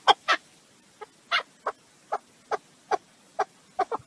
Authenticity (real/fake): real